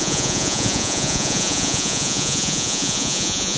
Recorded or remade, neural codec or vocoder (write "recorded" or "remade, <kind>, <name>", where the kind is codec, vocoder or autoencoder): remade, vocoder, Vocos